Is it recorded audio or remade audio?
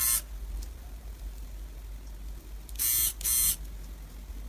recorded